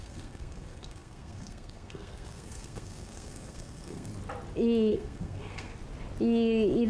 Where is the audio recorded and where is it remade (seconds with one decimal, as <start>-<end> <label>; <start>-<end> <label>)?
0.0-4.1 remade; 4.1-4.9 recorded; 4.9-5.7 remade; 5.7-6.9 recorded